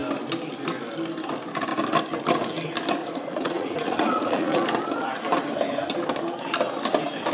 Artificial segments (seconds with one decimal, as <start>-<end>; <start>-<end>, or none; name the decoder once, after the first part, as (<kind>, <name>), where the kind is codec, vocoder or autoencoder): 3.0-4.6 (vocoder, Vocos)